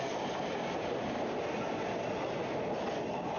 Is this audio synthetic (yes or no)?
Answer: no